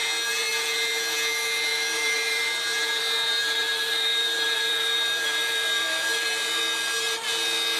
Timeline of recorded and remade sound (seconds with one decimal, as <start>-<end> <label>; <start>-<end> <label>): 0.0-1.7 recorded; 1.7-2.6 remade; 2.6-3.3 recorded; 3.3-6.6 remade; 6.6-7.8 recorded